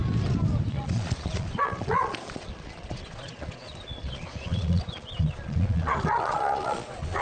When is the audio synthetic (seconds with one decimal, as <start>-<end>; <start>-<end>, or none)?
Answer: 0.7-7.2